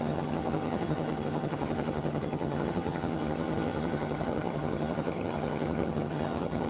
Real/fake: fake